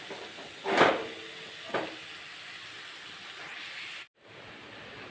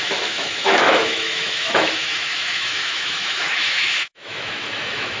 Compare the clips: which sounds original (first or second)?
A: first